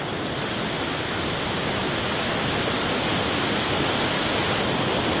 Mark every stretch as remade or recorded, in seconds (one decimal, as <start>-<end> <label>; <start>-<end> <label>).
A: 0.0-5.2 recorded